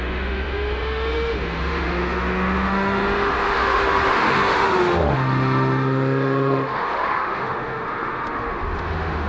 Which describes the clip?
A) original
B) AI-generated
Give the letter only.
B